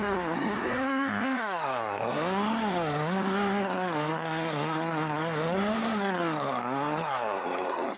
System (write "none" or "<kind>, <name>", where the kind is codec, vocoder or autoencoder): codec, SNAC